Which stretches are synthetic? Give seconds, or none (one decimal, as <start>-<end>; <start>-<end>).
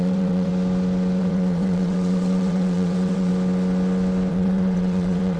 0.0-0.5; 1.2-3.3; 4.3-5.4